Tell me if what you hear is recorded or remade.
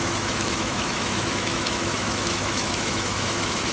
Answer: remade